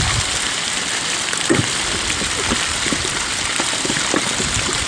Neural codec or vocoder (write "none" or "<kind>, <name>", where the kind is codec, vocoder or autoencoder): none